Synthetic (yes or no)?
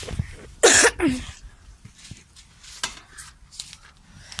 no